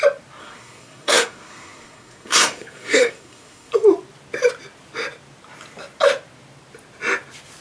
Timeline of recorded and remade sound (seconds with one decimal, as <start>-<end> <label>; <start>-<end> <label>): 0.0-0.4 recorded; 0.4-3.7 remade; 3.7-7.6 recorded

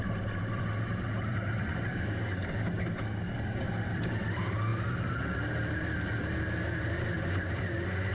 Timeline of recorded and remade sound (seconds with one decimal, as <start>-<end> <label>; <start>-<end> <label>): 0.0-1.9 recorded; 1.9-3.7 remade; 3.7-8.1 recorded

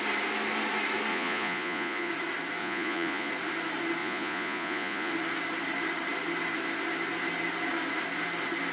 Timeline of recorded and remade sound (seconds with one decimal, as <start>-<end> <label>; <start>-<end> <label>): 0.0-1.1 recorded; 1.1-2.1 remade; 2.1-2.6 recorded; 2.6-3.3 remade; 3.3-4.0 recorded; 4.0-5.1 remade; 5.1-8.7 recorded

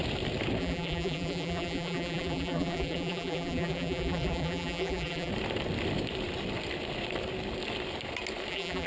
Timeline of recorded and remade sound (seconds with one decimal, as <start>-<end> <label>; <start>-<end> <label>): 0.0-0.6 recorded; 0.6-5.3 remade; 5.3-8.5 recorded; 8.5-8.9 remade